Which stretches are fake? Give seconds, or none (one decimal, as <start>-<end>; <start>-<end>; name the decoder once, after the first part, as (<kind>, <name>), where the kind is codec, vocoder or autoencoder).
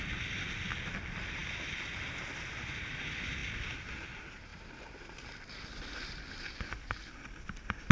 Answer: none